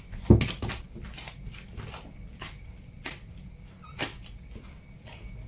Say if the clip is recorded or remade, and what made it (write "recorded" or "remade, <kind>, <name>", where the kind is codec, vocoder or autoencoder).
recorded